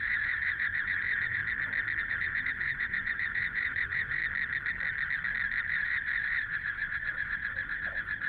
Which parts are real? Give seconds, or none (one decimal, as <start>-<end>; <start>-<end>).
1.4-2.0; 4.2-5.7